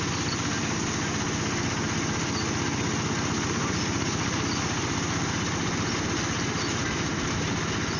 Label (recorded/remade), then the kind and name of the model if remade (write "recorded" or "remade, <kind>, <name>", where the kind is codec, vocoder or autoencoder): recorded